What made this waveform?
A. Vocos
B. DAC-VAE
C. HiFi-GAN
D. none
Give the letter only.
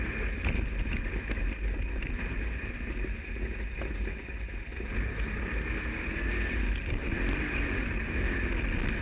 D